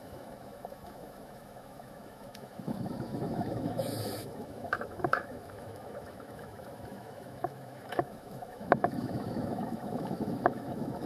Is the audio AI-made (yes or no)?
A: yes